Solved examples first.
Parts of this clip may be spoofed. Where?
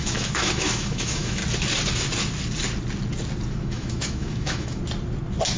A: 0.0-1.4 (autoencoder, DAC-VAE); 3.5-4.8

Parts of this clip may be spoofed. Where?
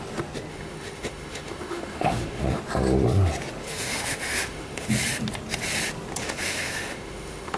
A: 0.5-2.6 (autoencoder, DAC-VAE); 3.6-4.9; 6.2-7.6